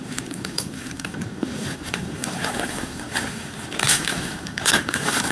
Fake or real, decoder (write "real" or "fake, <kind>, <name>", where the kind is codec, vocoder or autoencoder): fake, codec, SNAC